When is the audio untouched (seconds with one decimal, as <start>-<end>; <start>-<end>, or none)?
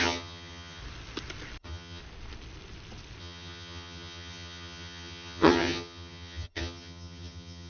0.8-1.6; 2.0-3.2